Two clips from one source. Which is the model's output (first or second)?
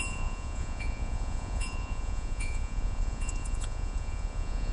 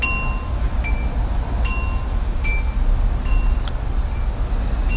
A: first